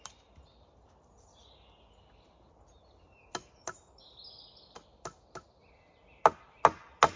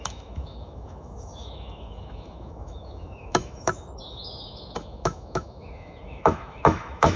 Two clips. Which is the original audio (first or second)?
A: first